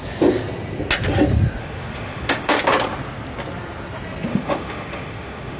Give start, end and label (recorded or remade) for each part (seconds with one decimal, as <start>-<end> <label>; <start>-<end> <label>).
0.0-1.6 recorded; 1.6-2.6 remade; 2.6-4.3 recorded; 4.3-5.6 remade